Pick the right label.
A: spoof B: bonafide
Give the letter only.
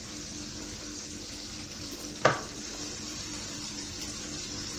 A